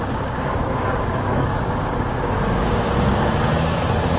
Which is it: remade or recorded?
remade